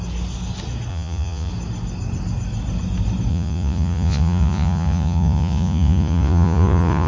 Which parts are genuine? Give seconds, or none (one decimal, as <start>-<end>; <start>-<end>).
0.0-0.9; 1.5-3.3